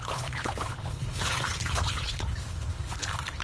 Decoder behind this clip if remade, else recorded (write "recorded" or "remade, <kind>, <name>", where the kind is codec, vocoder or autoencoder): remade, codec, HILCodec